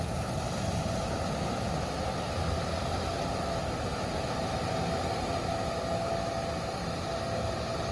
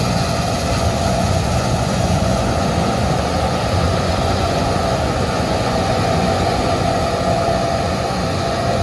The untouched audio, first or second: first